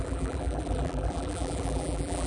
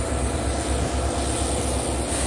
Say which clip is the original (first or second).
second